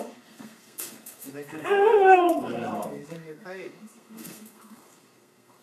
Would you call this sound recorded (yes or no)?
no